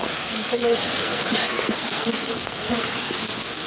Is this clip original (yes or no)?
no